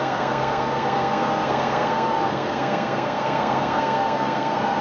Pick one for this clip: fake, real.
fake